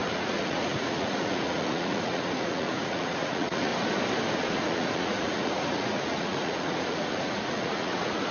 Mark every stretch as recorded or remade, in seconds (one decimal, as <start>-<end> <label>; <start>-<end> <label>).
0.0-3.7 remade; 3.7-4.4 recorded; 4.4-8.3 remade